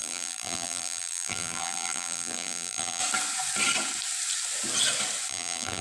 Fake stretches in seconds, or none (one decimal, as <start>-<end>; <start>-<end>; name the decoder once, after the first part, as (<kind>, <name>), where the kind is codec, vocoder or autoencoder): 0.0-3.0 (vocoder, BigVGAN v2); 5.3-5.8